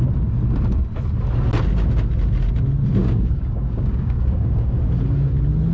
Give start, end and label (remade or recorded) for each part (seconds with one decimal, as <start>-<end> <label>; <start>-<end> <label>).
0.0-3.0 recorded; 3.0-4.8 remade; 4.8-5.7 recorded